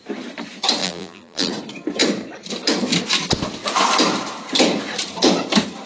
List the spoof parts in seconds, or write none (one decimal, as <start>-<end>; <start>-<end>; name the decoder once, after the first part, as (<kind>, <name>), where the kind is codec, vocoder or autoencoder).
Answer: 0.8-1.5 (vocoder, BigVGAN v2)